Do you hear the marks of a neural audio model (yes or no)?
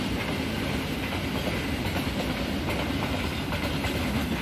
no